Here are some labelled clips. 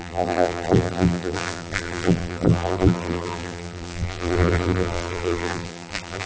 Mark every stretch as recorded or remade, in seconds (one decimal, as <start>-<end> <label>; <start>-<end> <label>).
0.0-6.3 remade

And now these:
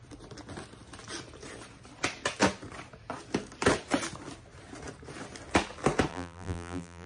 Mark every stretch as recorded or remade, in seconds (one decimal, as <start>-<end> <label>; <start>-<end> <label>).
0.0-6.1 recorded; 6.1-7.1 remade

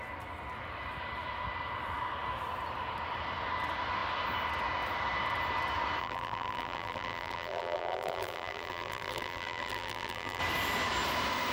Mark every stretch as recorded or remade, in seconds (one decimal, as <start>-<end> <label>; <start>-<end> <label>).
0.0-6.0 recorded; 6.0-10.4 remade; 10.4-11.5 recorded

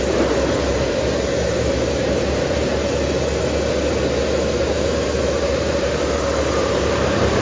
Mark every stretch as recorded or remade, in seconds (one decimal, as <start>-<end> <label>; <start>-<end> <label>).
0.0-2.7 remade; 2.7-4.6 recorded; 4.6-7.4 remade

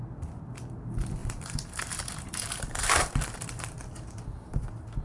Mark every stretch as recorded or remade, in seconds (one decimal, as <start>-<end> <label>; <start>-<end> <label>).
0.0-1.2 recorded; 1.2-4.2 remade; 4.2-5.0 recorded

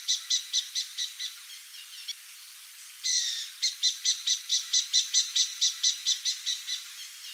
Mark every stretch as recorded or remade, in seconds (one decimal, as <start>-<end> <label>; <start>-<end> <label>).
0.0-7.3 recorded

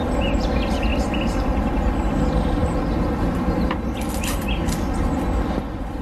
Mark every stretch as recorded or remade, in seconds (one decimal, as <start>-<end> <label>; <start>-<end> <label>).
0.0-0.9 recorded; 0.9-1.7 remade; 1.7-2.6 recorded; 2.6-4.0 remade; 4.0-6.0 recorded

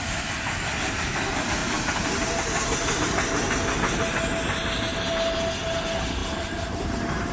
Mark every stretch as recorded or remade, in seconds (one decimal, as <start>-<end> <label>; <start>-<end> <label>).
0.0-1.6 recorded; 1.6-3.0 remade; 3.0-6.2 recorded; 6.2-7.3 remade